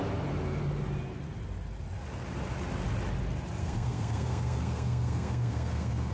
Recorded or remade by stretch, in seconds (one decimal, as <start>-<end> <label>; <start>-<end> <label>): 0.0-3.6 recorded; 3.6-6.1 remade